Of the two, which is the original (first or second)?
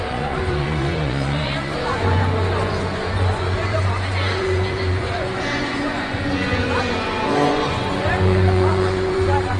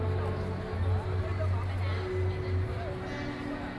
second